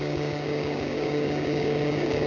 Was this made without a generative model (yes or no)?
no